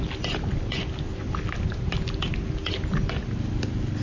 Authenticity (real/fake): real